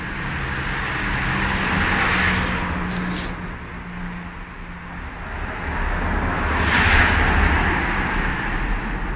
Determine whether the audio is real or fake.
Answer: real